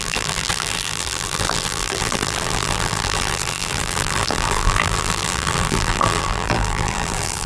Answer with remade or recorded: remade